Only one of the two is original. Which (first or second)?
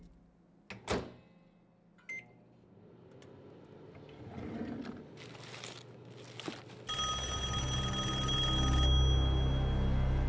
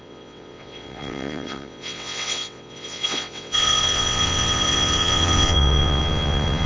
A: first